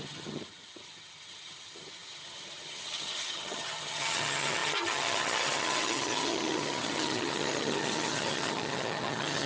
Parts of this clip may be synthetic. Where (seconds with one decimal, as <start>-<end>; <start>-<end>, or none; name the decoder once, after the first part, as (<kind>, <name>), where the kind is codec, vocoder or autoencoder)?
0.0-9.5 (vocoder, HiFi-GAN)